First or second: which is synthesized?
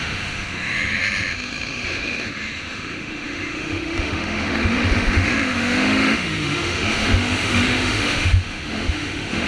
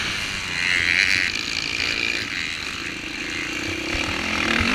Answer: first